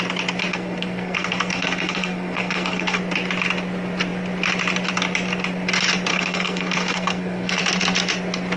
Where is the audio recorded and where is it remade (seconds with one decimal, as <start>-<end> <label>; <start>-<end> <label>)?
0.0-0.5 recorded; 0.5-3.0 remade; 3.0-6.1 recorded; 6.1-7.6 remade; 7.6-8.6 recorded

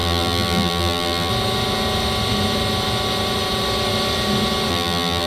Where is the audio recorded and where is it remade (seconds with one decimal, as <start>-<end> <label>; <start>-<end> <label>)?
0.0-1.3 remade; 1.3-4.7 recorded; 4.7-5.3 remade

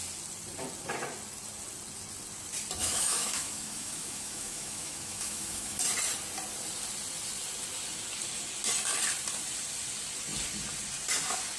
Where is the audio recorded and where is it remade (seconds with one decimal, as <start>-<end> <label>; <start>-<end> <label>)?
0.0-2.8 recorded; 2.8-5.8 remade; 5.8-11.6 recorded

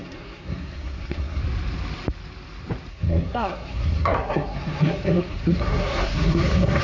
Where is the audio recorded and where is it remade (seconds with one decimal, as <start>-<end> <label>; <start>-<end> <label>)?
0.0-1.4 remade; 1.4-2.9 recorded; 2.9-6.8 remade

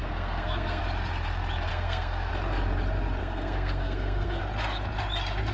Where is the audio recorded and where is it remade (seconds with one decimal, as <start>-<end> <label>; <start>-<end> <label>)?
0.0-0.8 remade; 0.8-1.7 recorded; 1.7-2.3 remade; 2.3-3.2 recorded; 3.2-4.4 remade; 4.4-5.5 recorded